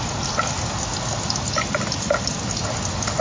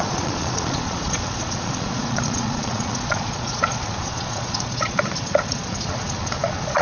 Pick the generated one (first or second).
second